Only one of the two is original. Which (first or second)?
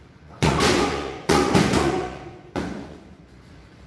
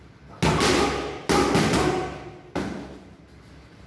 second